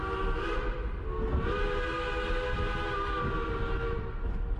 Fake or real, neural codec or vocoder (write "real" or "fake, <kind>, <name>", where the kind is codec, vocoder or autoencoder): real